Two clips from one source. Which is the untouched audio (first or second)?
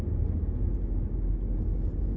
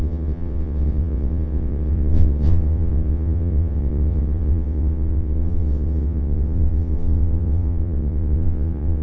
first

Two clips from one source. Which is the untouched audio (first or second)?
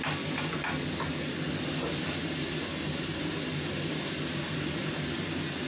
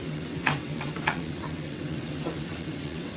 first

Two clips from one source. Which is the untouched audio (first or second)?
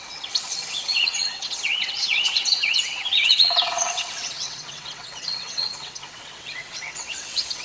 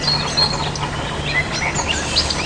second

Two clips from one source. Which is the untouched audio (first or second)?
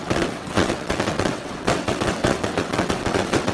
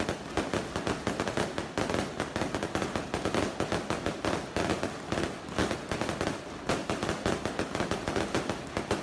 second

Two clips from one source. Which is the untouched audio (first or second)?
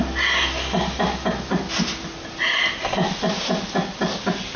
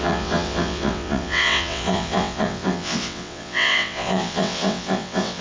first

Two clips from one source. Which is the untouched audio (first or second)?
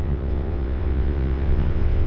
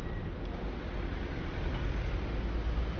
second